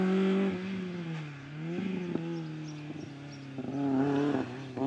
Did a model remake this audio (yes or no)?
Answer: no